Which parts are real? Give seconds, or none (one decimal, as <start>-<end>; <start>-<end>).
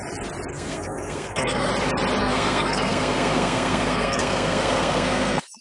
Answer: 0.0-0.5; 1.7-2.2